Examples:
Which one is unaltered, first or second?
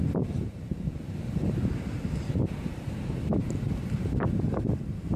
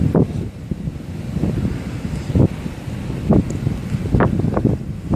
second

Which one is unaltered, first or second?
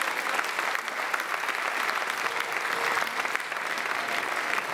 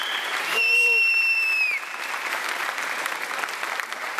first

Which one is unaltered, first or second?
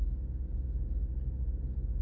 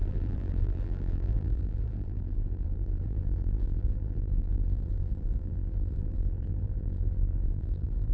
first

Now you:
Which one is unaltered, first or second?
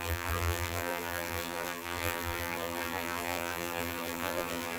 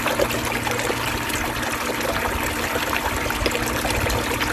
second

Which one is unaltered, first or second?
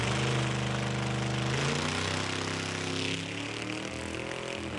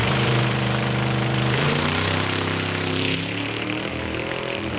first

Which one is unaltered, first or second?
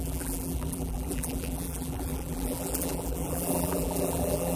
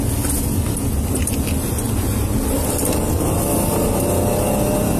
second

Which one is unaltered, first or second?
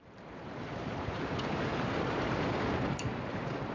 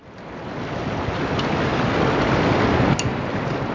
second